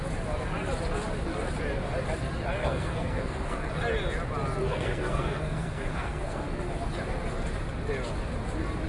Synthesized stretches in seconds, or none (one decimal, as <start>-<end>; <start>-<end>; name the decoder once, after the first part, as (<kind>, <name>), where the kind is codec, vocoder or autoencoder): 2.6-3.7 (codec, SNAC); 4.6-6.7